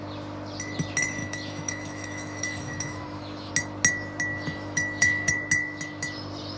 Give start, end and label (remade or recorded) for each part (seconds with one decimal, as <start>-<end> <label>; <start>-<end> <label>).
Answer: 0.0-1.2 recorded; 1.2-3.5 remade; 3.5-4.3 recorded; 4.3-5.3 remade; 5.3-6.6 recorded